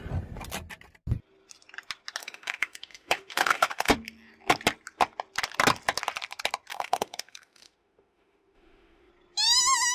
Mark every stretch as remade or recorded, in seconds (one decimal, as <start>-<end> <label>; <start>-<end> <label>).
0.0-2.2 recorded; 2.2-3.9 remade; 3.9-6.7 recorded; 6.7-9.1 remade; 9.1-9.9 recorded